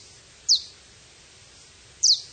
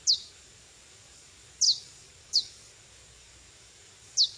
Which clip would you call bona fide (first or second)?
first